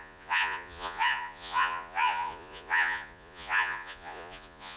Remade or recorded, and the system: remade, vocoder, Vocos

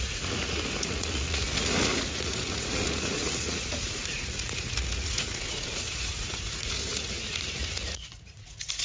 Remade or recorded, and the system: remade, vocoder, Vocos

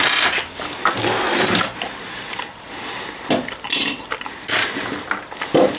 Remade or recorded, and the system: recorded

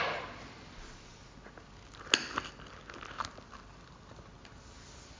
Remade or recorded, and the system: recorded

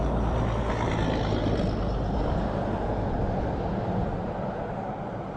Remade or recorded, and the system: recorded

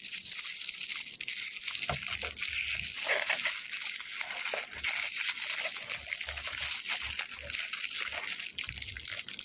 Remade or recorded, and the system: recorded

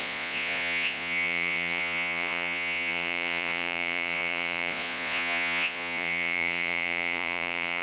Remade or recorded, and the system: remade, vocoder, Vocos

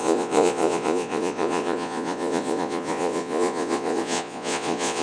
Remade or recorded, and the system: remade, vocoder, Vocos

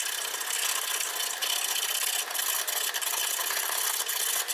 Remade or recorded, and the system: recorded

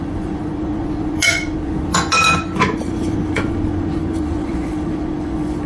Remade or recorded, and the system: remade, vocoder, Vocos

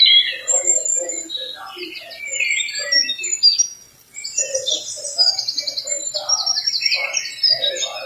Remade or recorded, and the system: recorded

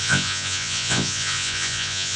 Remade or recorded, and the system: remade, vocoder, Vocos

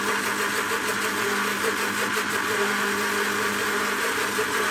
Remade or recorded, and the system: recorded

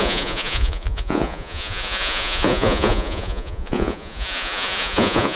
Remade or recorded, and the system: remade, vocoder, Vocos